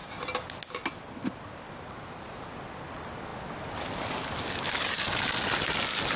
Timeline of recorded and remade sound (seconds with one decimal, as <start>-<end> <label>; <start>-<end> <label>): 0.0-6.2 recorded

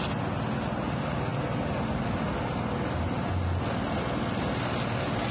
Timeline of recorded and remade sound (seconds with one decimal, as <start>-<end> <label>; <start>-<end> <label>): 0.0-5.3 recorded